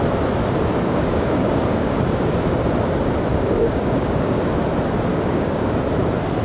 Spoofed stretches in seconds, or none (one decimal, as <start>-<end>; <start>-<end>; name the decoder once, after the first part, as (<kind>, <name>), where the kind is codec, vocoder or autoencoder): 0.7-2.0 (codec, DAC); 3.3-4.4; 5.1-5.7